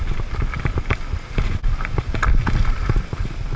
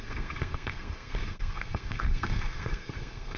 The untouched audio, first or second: first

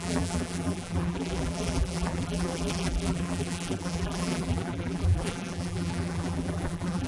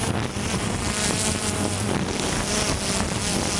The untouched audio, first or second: second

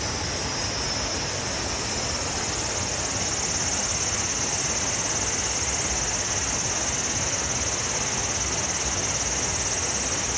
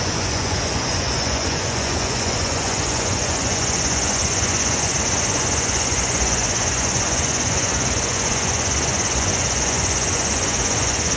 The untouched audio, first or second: first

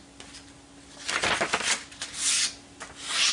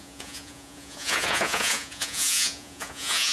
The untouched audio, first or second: first